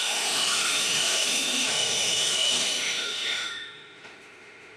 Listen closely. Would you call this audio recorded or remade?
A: remade